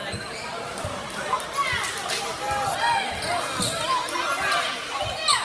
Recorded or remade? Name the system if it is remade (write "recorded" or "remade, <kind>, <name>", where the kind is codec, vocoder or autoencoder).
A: recorded